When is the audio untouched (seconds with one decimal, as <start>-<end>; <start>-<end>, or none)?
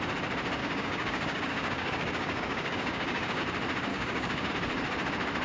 0.0-0.6; 3.4-3.9; 4.5-5.4